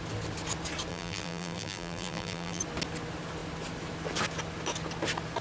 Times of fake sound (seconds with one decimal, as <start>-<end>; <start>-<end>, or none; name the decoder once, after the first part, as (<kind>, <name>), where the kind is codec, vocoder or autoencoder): 0.9-2.6 (vocoder, BigVGAN v2)